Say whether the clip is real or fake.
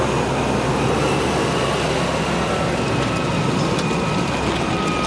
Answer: real